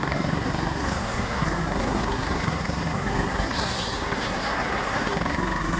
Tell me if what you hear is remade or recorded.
remade